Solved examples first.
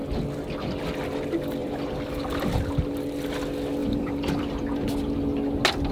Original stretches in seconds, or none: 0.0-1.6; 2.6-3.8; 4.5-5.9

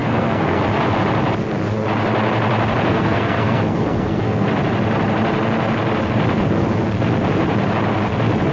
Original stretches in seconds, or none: 0.6-2.9; 4.5-8.5

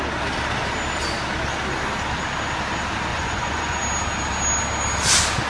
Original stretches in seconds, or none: 0.0-3.1; 3.8-5.5

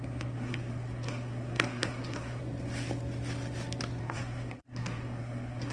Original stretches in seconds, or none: 2.4-4.0